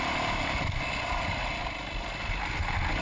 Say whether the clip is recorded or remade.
recorded